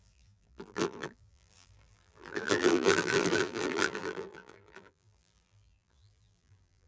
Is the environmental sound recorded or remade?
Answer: remade